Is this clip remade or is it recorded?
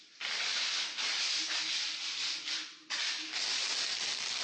recorded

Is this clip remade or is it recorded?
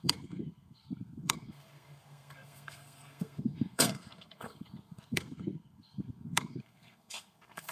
remade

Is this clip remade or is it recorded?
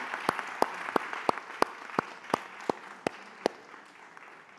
recorded